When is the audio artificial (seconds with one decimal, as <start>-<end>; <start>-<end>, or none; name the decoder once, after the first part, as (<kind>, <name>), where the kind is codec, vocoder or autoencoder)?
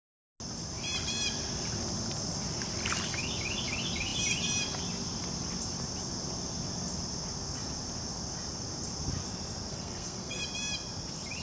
9.7-10.4 (codec, SNAC)